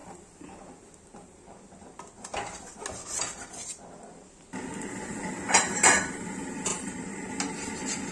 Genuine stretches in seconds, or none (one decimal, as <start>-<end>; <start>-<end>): 0.0-6.7; 7.3-8.1

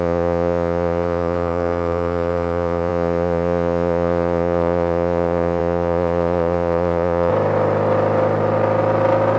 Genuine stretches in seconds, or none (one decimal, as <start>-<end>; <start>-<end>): 7.3-9.4

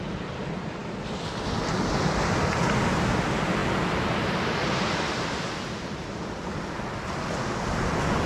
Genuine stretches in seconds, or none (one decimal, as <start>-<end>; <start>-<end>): 0.0-8.3

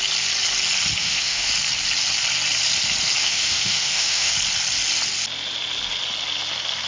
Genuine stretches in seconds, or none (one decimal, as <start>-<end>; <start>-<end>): 0.0-1.0; 1.5-3.2; 4.3-6.9

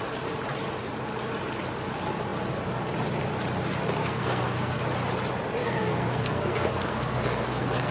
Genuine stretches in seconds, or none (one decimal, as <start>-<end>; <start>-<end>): 0.0-4.0; 4.8-5.6

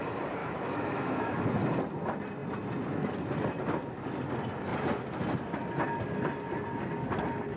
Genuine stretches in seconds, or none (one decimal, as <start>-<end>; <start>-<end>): 0.0-0.4; 1.3-7.6